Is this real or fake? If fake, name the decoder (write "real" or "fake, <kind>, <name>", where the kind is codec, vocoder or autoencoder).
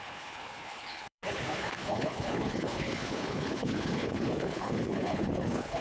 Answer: fake, codec, HILCodec